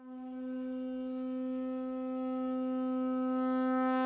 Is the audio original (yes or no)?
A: yes